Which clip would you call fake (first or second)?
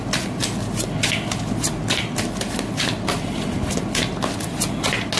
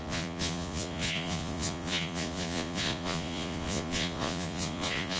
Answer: second